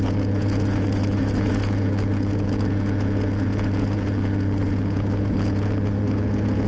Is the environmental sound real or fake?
fake